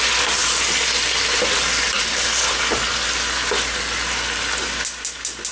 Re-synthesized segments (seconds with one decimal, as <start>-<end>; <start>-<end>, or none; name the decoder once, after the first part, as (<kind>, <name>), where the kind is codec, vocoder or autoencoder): none